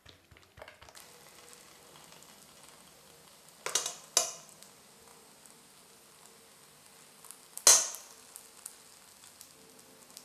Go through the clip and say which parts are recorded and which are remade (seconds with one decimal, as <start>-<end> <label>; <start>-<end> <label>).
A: 0.0-10.2 recorded